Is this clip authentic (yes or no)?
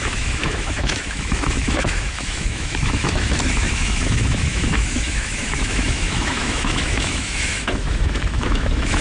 no